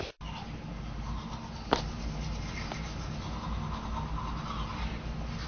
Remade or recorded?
recorded